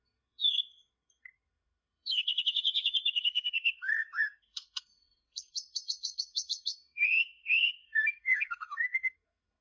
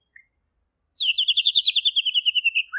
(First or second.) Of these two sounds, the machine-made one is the first